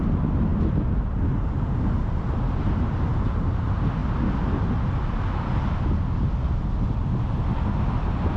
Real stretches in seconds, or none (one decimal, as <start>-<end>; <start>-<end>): 0.0-8.4